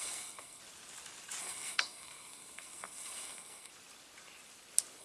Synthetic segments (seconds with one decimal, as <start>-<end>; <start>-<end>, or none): 0.0-0.6; 1.4-3.7